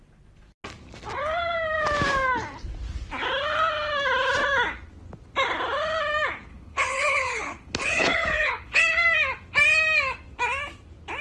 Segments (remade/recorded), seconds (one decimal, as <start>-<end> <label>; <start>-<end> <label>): 0.0-6.5 recorded; 6.5-8.8 remade; 8.8-11.2 recorded